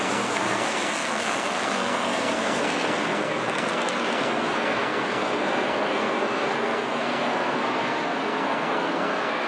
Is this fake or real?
fake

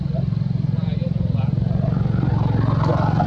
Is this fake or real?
real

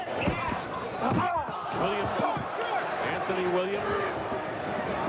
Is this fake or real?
real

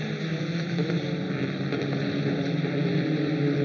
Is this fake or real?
real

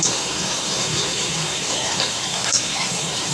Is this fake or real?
fake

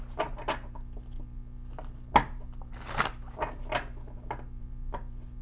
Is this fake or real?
real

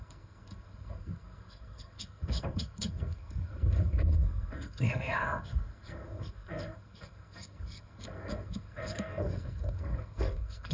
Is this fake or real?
fake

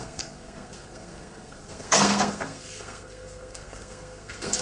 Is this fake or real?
fake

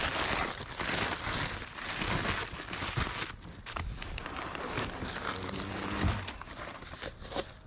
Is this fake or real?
real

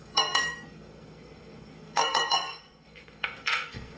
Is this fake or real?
fake